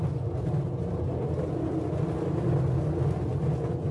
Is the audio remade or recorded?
recorded